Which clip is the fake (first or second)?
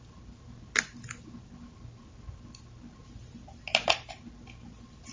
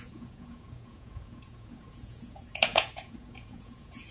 second